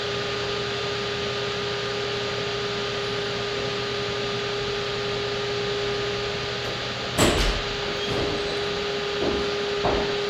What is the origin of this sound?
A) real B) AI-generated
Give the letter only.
A